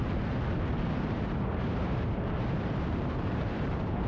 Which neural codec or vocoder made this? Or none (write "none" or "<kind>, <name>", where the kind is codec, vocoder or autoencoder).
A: vocoder, BigVGAN v2